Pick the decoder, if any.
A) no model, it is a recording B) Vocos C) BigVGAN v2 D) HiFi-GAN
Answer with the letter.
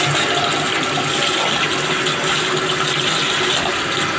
A